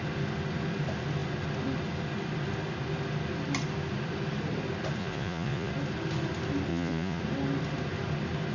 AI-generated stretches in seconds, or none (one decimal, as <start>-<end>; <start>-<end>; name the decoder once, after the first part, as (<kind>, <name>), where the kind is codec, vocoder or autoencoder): 5.0-5.7 (vocoder, Vocos); 6.7-7.2